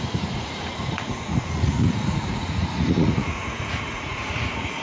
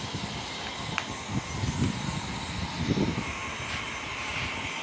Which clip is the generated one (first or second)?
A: first